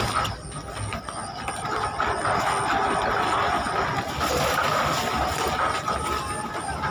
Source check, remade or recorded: recorded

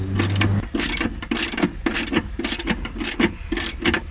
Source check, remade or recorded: recorded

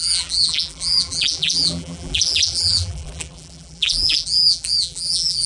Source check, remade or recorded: remade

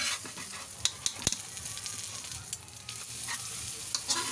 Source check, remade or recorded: recorded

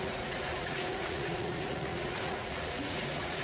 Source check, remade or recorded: remade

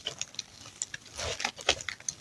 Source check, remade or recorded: recorded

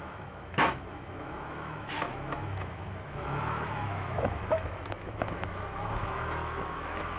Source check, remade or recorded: remade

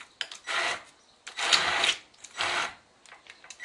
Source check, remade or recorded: recorded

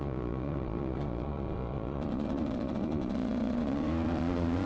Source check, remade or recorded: remade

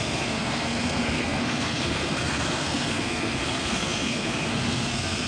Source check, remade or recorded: remade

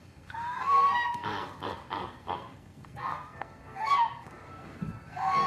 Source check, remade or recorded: remade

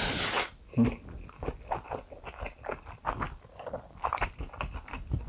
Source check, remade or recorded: recorded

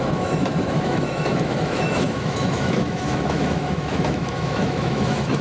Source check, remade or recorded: remade